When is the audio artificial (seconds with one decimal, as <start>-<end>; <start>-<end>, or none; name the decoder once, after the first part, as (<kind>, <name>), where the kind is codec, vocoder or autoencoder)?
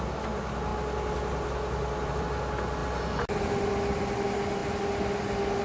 none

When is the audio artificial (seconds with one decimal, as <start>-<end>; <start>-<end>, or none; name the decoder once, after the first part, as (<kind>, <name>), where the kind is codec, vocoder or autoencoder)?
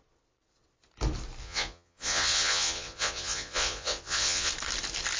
1.4-4.5 (vocoder, Vocos)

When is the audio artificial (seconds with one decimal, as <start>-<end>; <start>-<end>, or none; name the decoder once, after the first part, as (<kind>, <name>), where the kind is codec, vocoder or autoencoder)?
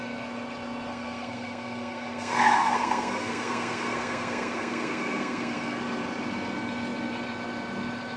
0.9-5.8 (codec, SNAC)